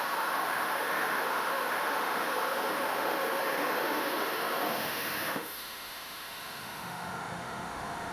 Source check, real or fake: fake